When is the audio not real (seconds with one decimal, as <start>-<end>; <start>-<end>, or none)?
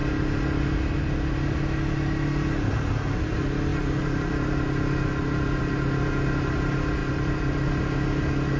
7.0-7.8